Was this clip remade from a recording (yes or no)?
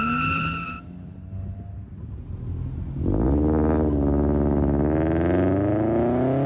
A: no